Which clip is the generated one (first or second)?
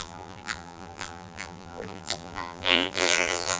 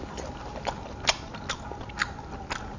first